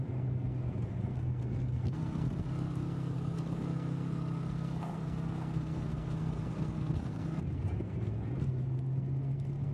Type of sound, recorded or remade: remade